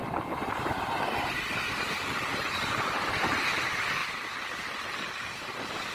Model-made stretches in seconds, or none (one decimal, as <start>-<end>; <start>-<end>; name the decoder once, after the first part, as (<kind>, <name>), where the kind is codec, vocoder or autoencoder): 3.0-5.9 (vocoder, BigVGAN v2)